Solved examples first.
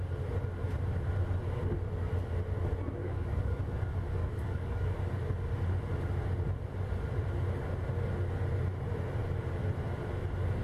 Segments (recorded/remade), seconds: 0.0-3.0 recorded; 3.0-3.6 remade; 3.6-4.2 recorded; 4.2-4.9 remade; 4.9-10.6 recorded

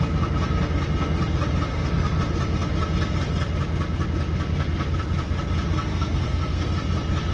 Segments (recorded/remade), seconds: 0.0-1.7 recorded; 1.7-2.2 remade; 2.2-5.9 recorded; 5.9-6.7 remade; 6.7-7.3 recorded

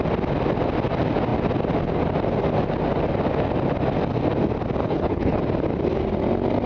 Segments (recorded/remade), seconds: 0.0-4.8 recorded; 4.8-5.4 remade; 5.4-6.7 recorded

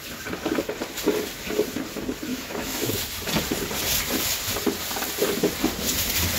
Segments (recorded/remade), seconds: 0.0-2.3 recorded; 2.3-2.9 remade; 2.9-6.4 recorded

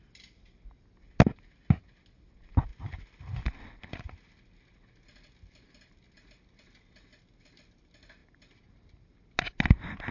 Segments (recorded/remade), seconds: 0.0-10.1 recorded